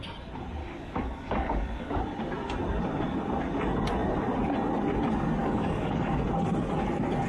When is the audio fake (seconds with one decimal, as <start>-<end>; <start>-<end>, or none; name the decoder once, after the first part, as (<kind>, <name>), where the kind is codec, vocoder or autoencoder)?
0.6-2.0 (codec, DAC); 5.4-6.2